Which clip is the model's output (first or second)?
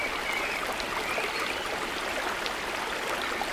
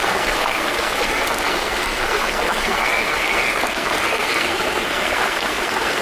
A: second